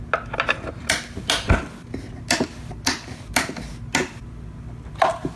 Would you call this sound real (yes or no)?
yes